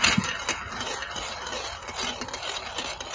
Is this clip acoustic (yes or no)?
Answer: yes